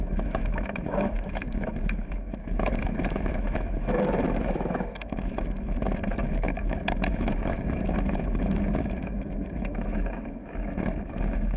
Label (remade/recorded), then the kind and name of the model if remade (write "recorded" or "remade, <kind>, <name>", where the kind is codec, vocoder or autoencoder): remade, autoencoder, DAC-VAE